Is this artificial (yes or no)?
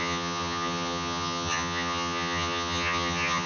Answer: yes